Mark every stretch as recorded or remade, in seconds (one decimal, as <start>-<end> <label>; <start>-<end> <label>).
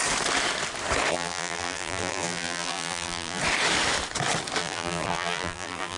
0.0-1.1 recorded; 1.1-3.4 remade; 3.4-4.6 recorded; 4.6-6.0 remade